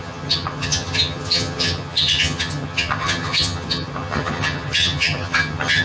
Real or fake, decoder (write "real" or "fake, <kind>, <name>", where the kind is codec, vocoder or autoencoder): fake, vocoder, HiFi-GAN